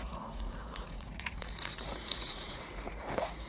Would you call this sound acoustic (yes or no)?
no